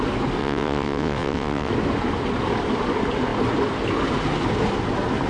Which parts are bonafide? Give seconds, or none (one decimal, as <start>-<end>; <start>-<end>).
0.0-0.4; 1.7-5.3